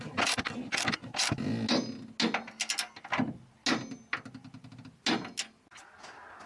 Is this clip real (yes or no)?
yes